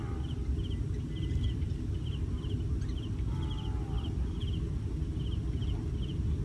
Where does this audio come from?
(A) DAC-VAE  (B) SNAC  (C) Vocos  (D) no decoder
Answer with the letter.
D